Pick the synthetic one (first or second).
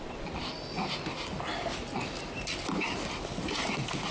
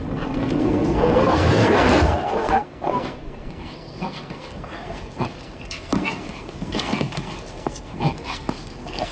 second